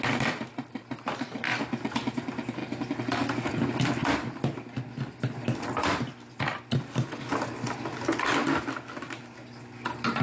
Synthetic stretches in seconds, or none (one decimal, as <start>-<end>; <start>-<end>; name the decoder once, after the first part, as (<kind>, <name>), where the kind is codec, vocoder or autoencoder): none